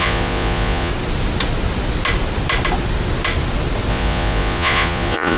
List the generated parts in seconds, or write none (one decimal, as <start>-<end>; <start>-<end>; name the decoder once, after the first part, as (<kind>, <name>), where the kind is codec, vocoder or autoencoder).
0.0-0.9 (vocoder, Vocos); 3.9-5.4